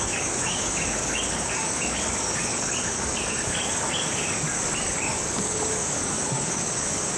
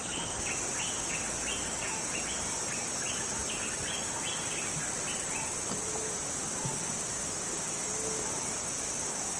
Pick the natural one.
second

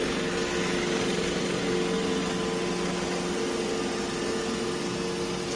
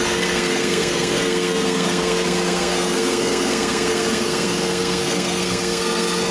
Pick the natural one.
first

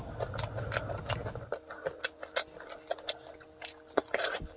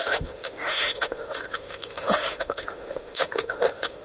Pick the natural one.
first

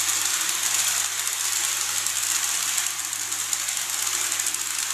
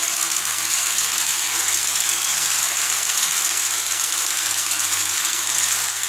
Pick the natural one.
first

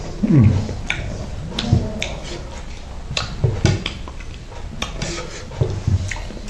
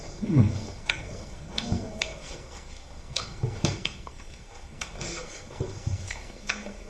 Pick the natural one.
first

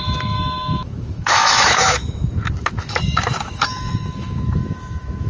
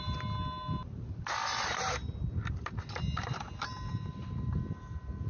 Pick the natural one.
second